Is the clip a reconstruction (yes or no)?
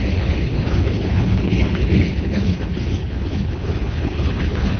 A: yes